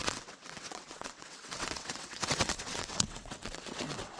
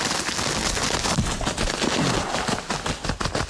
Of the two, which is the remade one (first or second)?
first